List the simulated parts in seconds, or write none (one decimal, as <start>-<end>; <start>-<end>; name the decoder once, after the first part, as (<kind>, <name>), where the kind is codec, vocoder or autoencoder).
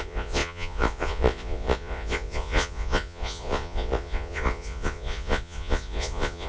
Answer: 0.0-6.5 (vocoder, Vocos)